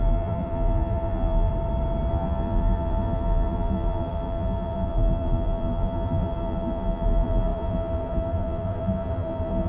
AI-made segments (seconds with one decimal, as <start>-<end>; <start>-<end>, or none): 0.0-1.5; 2.1-9.7